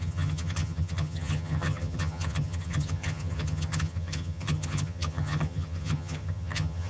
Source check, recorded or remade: remade